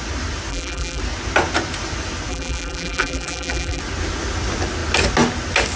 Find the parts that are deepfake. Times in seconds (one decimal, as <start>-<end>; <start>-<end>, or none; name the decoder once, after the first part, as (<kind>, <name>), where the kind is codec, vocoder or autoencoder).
0.5-1.0 (vocoder, BigVGAN v2); 2.3-3.8